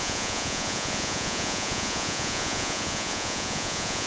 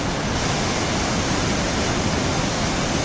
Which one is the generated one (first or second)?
first